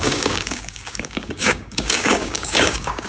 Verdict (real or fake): fake